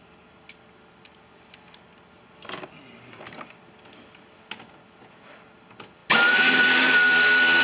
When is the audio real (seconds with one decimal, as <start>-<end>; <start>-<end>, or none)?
0.0-7.6